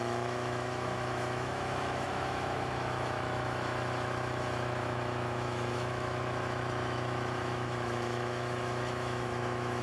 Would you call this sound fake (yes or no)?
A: yes